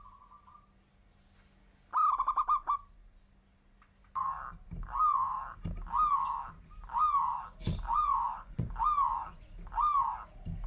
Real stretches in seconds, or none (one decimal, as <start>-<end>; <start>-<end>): 0.0-7.9; 8.7-10.7